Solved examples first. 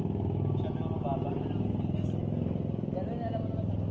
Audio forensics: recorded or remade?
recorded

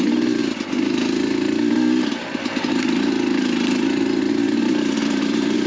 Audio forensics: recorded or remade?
recorded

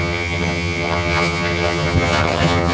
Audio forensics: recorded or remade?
remade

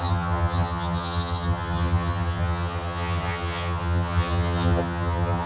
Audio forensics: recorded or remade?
remade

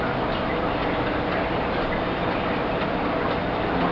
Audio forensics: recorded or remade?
recorded